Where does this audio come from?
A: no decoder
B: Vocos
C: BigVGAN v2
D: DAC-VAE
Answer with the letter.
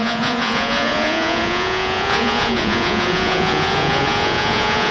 B